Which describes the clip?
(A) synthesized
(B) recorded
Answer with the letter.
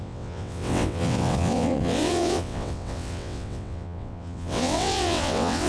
A